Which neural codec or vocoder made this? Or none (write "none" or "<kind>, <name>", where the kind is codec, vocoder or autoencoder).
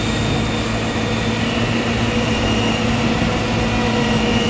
none